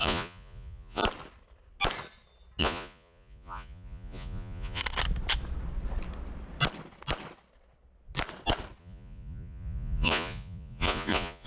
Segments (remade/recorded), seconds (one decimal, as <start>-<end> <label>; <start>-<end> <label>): 0.0-1.0 remade; 1.0-2.6 recorded; 2.6-4.8 remade; 4.8-8.8 recorded; 8.8-11.5 remade